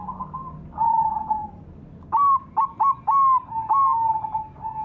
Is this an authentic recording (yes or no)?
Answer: yes